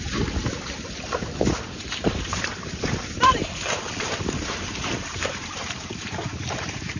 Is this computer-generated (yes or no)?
yes